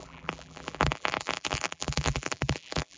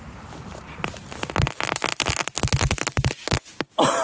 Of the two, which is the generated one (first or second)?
first